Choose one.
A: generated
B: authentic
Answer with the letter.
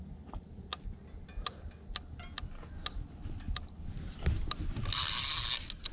B